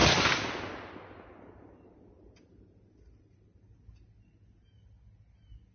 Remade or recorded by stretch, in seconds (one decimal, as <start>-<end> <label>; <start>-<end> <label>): 0.0-5.7 recorded